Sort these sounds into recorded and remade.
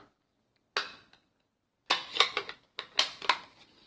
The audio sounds recorded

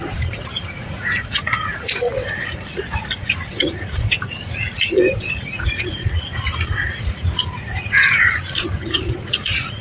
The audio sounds remade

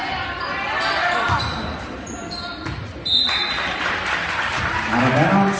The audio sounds recorded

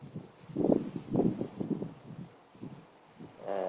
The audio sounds remade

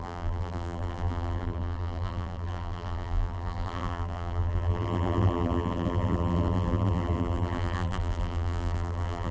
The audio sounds remade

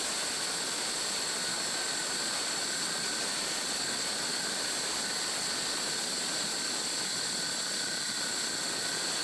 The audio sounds recorded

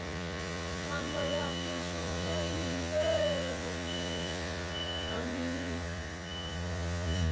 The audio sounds remade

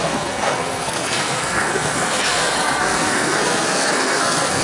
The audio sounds remade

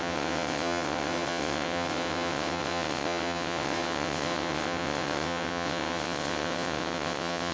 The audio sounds remade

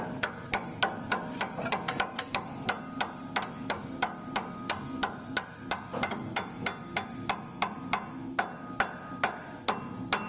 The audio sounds recorded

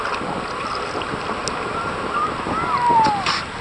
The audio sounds recorded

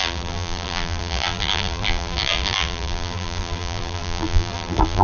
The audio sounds remade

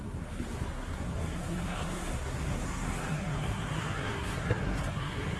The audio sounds remade